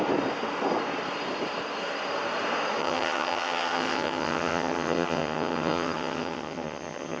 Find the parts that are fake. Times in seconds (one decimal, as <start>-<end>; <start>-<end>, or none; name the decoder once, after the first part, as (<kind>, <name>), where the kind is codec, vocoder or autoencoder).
2.8-7.2 (vocoder, HiFi-GAN)